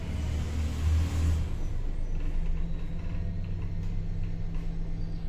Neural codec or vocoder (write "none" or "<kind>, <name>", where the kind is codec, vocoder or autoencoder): none